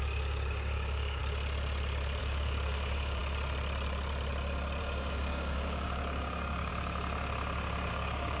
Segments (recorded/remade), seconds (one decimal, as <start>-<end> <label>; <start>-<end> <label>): 0.0-1.2 remade; 1.2-2.2 recorded; 2.2-3.2 remade; 3.2-4.8 recorded; 4.8-6.7 remade; 6.7-7.9 recorded; 7.9-8.4 remade